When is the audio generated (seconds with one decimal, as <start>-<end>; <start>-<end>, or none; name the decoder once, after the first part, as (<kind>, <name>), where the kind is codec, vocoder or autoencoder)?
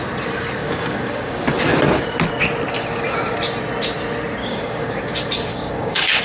0.6-1.4 (codec, DAC); 4.4-5.0; 5.5-6.2